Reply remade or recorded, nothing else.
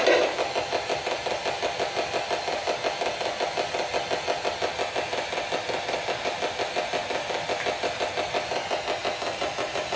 recorded